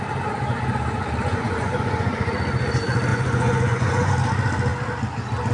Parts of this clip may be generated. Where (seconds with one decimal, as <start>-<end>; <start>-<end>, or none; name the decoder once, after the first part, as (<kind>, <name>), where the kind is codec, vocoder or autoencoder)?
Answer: 1.3-2.3 (vocoder, Vocos); 3.1-4.1